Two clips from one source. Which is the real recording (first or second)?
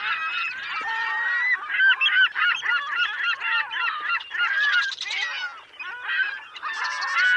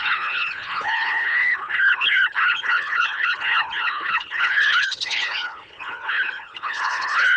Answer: first